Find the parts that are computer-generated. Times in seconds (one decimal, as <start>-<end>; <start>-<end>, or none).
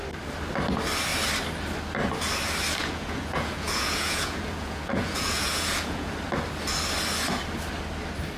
2.8-6.1